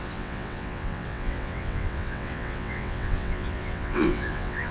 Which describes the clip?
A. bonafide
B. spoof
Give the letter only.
B